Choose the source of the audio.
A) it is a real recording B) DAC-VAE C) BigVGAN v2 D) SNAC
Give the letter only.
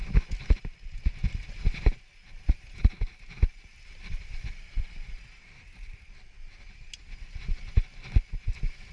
A